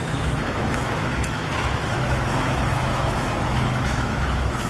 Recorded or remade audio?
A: remade